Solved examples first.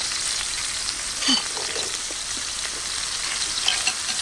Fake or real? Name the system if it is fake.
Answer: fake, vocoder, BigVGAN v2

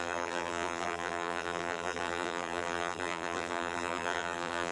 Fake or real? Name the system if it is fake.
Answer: fake, vocoder, BigVGAN v2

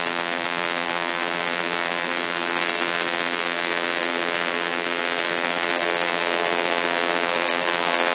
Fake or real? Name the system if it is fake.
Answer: fake, vocoder, BigVGAN v2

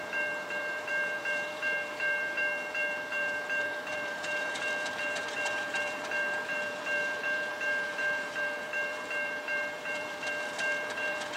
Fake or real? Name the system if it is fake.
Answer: fake, vocoder, BigVGAN v2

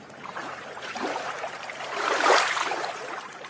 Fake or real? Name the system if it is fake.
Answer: fake, vocoder, BigVGAN v2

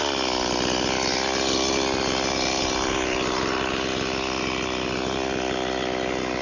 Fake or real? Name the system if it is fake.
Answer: real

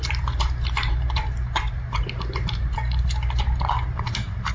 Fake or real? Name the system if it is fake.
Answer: fake, vocoder, BigVGAN v2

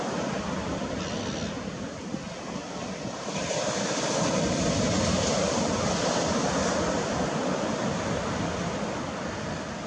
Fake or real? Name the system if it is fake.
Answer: real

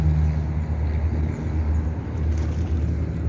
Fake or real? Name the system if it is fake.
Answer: real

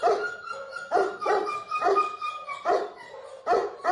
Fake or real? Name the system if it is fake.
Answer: real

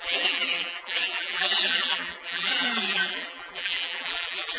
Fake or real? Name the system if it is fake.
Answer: fake, vocoder, BigVGAN v2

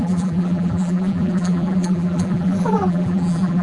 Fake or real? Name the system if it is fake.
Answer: fake, vocoder, BigVGAN v2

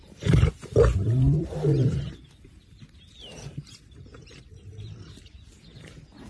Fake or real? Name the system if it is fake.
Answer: fake, vocoder, BigVGAN v2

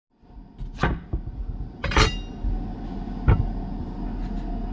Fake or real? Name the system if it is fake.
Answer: real